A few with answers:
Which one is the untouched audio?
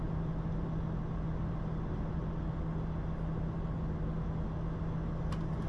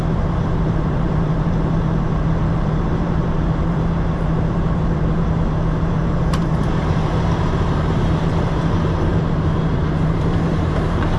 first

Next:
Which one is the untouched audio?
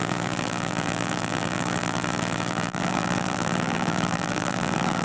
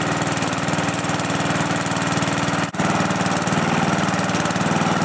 second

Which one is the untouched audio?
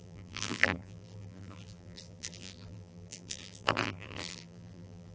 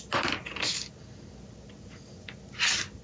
second